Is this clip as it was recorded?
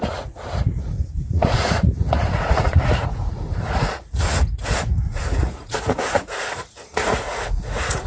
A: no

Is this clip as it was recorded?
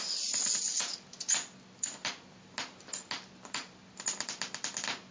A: yes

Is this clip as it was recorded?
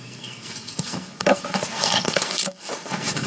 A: no